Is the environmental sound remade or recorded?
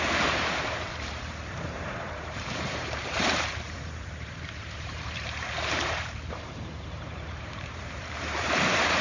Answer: remade